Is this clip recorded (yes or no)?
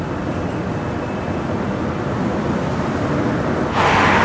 yes